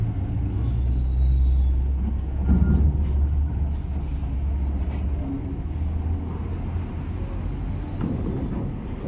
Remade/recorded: recorded